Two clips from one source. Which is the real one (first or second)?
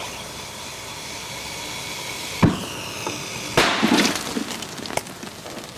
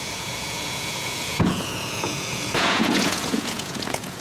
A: first